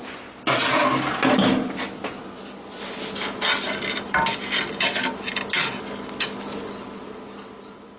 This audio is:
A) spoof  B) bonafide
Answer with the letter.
B